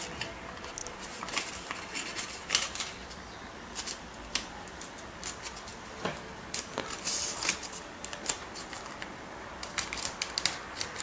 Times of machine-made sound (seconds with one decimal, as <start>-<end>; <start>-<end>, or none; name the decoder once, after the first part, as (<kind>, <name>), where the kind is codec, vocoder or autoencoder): none